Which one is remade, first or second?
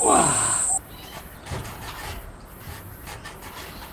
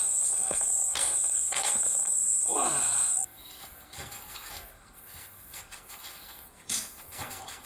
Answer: second